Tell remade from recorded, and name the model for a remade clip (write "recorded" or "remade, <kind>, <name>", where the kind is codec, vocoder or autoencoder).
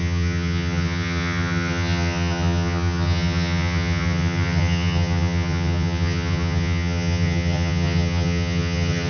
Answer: remade, vocoder, HiFi-GAN